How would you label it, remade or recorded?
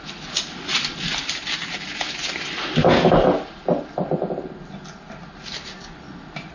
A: recorded